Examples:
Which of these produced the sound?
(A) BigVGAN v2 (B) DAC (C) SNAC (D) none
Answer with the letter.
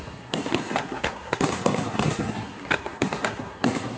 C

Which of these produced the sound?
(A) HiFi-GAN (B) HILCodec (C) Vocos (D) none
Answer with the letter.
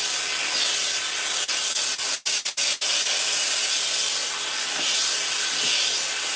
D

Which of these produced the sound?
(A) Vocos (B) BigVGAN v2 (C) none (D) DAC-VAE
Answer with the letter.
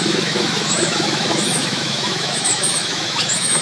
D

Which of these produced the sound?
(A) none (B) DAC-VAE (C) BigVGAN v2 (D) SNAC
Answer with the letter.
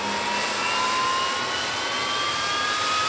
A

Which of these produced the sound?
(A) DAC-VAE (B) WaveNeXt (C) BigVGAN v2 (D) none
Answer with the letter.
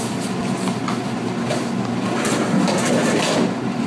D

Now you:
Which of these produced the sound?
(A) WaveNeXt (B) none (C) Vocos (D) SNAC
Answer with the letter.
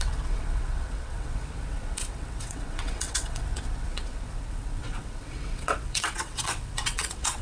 A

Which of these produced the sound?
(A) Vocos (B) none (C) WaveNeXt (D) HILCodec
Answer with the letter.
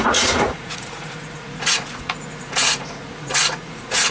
A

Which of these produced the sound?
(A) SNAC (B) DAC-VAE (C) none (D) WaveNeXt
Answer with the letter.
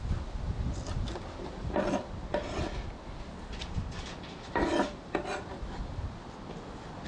C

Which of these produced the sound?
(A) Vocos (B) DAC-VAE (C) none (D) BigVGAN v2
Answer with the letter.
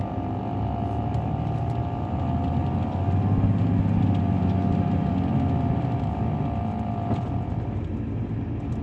C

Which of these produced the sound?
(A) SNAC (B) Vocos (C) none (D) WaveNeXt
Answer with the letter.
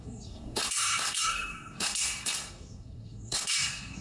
A